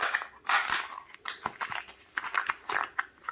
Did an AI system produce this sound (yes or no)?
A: no